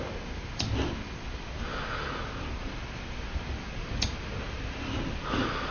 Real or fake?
real